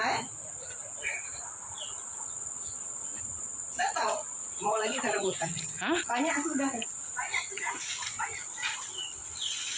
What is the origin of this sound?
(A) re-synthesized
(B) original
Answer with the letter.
A